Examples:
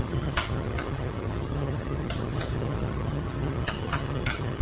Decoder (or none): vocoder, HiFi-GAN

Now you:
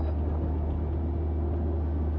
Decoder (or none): none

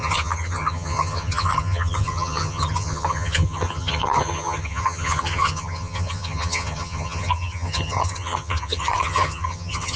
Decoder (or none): vocoder, HiFi-GAN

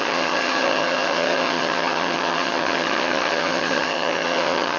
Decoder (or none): vocoder, HiFi-GAN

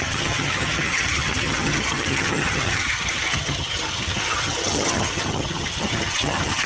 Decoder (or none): vocoder, HiFi-GAN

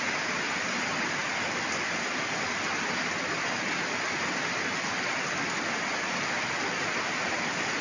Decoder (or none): none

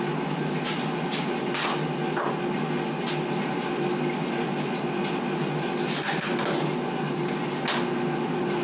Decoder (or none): none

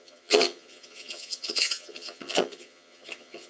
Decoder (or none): vocoder, HiFi-GAN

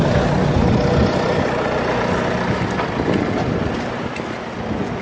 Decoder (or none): none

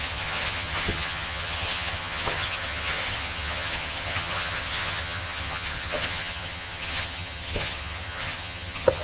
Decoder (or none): vocoder, HiFi-GAN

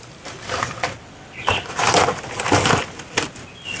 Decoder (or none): none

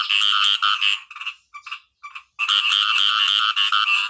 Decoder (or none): none